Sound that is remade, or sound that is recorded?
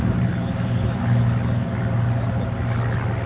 recorded